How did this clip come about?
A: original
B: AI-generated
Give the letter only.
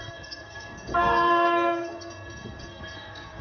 B